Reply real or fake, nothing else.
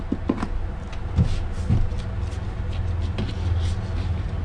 real